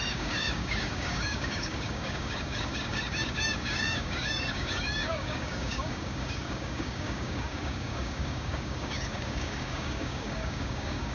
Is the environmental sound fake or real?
fake